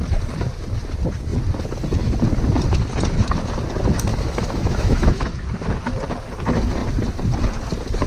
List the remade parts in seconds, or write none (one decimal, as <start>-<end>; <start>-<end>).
4.1-5.3